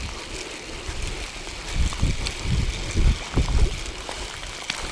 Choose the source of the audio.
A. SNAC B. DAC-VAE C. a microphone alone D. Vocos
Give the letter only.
C